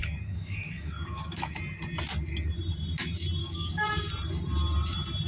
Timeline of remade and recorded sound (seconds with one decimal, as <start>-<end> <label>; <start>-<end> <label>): 0.0-1.6 remade; 1.6-3.4 recorded; 3.4-4.1 remade; 4.1-5.3 recorded